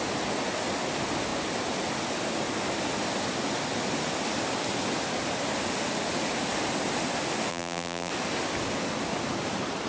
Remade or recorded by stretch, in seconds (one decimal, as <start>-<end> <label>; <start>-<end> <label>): 0.0-7.5 recorded; 7.5-8.1 remade; 8.1-9.9 recorded